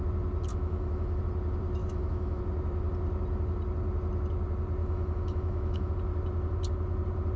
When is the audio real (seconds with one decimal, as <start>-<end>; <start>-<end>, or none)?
0.0-0.5; 1.2-1.8; 2.4-4.8; 5.9-7.4